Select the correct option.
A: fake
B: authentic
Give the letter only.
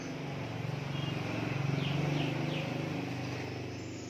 B